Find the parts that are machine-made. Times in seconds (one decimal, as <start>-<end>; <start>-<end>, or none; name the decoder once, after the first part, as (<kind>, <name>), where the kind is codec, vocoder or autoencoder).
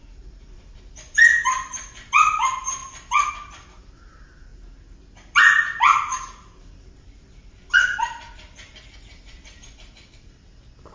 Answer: 0.0-4.5 (vocoder, BigVGAN v2); 6.6-10.9